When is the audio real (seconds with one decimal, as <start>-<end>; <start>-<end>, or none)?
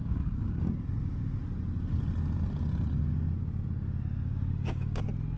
0.7-4.2; 5.0-5.4